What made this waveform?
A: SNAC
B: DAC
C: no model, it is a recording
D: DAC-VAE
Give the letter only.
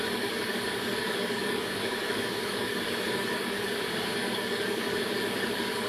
B